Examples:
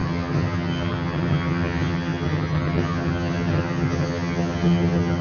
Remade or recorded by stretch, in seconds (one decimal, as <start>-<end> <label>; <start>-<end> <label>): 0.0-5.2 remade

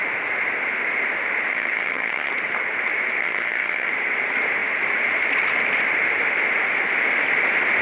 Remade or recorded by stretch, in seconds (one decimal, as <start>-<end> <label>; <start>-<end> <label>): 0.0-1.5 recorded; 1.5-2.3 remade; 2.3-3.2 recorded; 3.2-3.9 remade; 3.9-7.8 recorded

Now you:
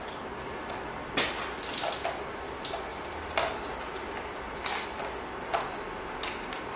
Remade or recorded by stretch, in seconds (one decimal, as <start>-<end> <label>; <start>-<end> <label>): 0.0-6.8 recorded